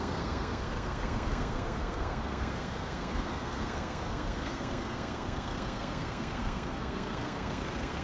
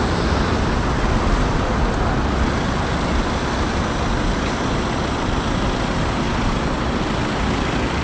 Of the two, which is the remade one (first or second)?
first